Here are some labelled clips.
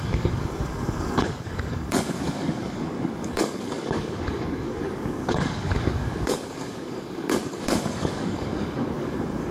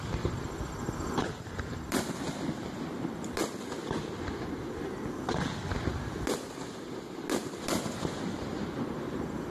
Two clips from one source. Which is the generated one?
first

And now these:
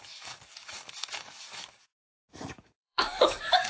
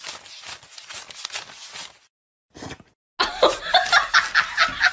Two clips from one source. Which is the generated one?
first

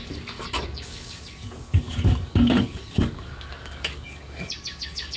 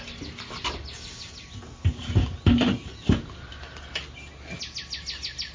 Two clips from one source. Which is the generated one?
first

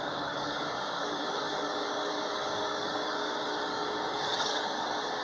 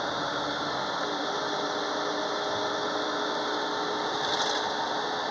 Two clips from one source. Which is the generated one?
first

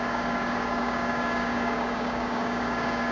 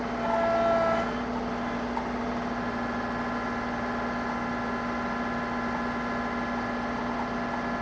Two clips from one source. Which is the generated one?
first